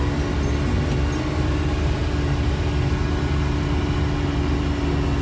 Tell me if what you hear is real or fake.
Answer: real